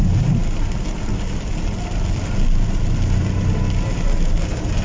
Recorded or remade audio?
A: recorded